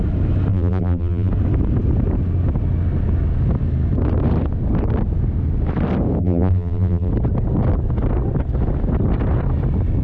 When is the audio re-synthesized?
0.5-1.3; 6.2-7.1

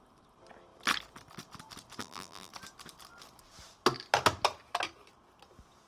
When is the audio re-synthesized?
2.0-2.5